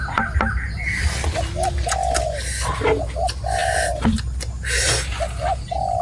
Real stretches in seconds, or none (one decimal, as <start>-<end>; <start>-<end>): 0.0-6.0